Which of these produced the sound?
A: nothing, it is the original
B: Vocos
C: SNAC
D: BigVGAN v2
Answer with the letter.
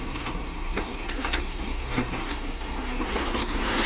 C